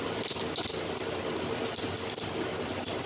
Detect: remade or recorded recorded